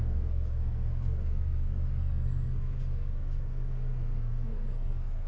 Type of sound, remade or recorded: remade